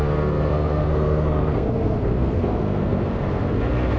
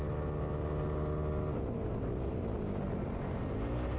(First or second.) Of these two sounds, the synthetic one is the first